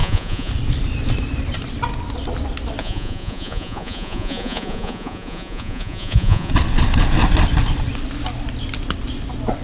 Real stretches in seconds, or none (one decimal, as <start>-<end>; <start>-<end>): 0.5-2.8; 6.5-9.6